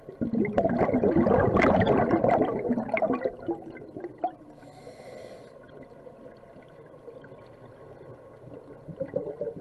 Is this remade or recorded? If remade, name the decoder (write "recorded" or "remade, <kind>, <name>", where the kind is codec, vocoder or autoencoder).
recorded